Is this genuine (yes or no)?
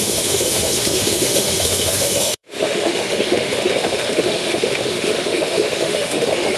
no